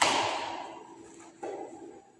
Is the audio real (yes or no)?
yes